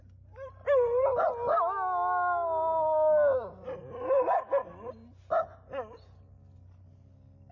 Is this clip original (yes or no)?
yes